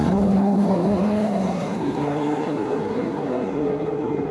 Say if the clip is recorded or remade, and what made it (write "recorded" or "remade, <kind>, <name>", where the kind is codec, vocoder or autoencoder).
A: remade, codec, SNAC